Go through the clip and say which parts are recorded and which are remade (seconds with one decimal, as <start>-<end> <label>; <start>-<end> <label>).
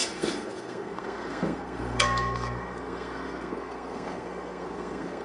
0.0-5.2 remade